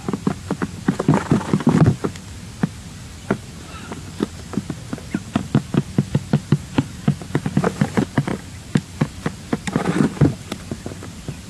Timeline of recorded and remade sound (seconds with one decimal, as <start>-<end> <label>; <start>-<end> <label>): 0.0-11.5 recorded